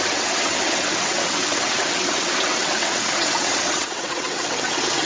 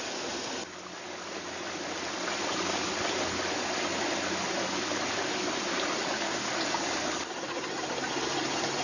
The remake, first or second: first